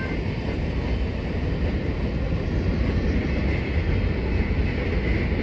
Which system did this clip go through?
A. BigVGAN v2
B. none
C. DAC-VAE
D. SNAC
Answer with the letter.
B